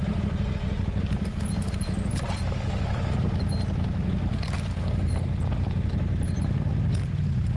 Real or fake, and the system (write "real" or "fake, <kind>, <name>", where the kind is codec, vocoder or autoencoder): real